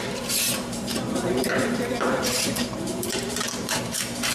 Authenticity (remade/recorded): remade